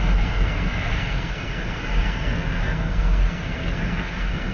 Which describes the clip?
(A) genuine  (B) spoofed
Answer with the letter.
B